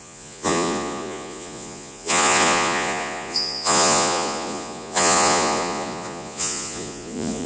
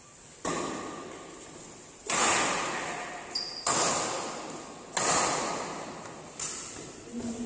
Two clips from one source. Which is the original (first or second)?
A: second